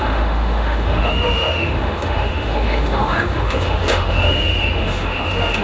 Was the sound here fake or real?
fake